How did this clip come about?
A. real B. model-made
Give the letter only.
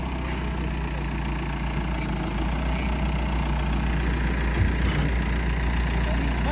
A